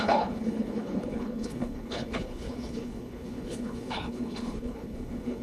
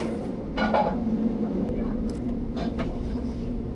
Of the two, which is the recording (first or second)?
second